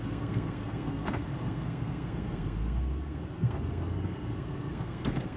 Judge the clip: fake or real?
fake